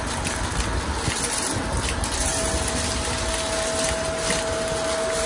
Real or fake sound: real